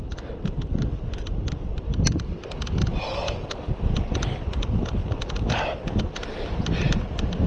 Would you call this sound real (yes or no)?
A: yes